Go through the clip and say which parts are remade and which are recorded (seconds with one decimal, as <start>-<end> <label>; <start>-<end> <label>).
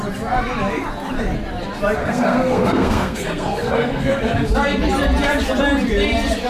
0.0-2.0 recorded; 2.0-4.2 remade; 4.2-6.5 recorded